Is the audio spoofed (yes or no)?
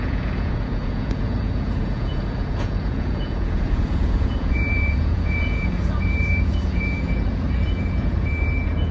yes